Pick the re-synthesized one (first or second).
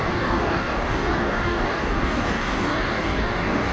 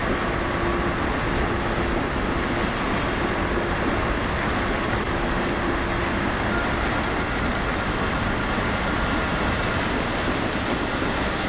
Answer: first